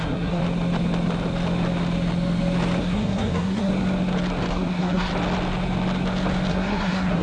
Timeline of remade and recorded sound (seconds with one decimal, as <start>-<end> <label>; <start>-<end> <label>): 0.0-0.4 remade; 0.4-2.8 recorded; 2.8-3.7 remade; 3.7-4.5 recorded; 4.5-5.1 remade; 5.1-6.5 recorded; 6.5-7.2 remade